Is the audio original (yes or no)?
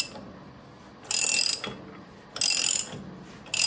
yes